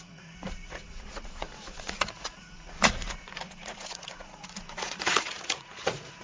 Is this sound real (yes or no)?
no